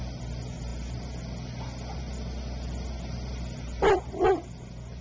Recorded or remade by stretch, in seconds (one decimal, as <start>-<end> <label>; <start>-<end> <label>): 0.0-5.0 recorded